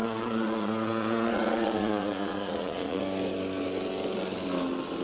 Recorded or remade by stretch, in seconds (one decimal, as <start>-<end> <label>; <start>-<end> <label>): 0.0-3.0 remade; 3.0-5.0 recorded

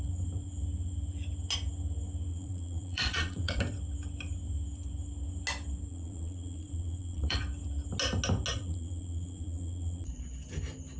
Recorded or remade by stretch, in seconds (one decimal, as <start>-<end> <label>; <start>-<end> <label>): 0.0-2.3 recorded; 2.3-3.6 remade; 3.6-5.9 recorded; 5.9-7.4 remade; 7.4-8.5 recorded; 8.5-10.3 remade; 10.3-11.0 recorded

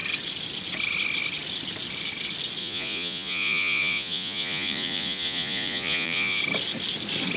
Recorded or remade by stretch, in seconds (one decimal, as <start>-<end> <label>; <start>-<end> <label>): 0.0-2.6 recorded; 2.6-6.4 remade; 6.4-7.4 recorded

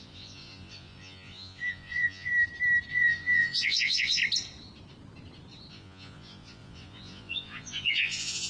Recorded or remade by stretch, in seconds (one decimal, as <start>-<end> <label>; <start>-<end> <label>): 0.0-2.3 remade; 2.3-2.9 recorded; 2.9-4.2 remade; 4.2-5.7 recorded; 5.7-8.5 remade

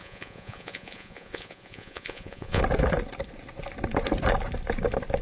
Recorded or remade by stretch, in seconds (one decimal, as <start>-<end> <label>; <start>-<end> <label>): 0.0-2.6 remade; 2.6-5.2 recorded

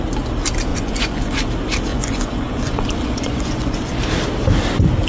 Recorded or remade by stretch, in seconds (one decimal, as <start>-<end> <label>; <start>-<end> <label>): 0.0-0.7 recorded; 0.7-1.5 remade; 1.5-1.9 recorded; 1.9-4.0 remade; 4.0-5.1 recorded

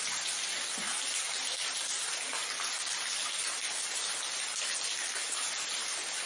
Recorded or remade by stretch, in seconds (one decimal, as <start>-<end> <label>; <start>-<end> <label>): 0.0-6.3 recorded